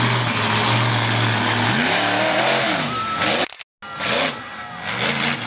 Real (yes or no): yes